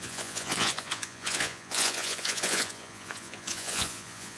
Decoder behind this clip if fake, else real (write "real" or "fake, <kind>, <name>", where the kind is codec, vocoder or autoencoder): fake, vocoder, Vocos